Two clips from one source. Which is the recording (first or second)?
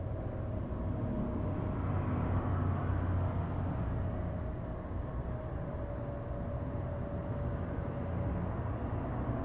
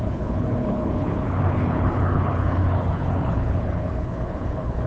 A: first